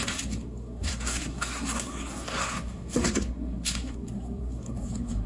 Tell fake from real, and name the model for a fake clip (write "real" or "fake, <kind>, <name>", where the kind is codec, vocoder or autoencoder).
fake, codec, SNAC